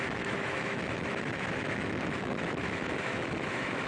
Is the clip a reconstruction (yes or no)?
yes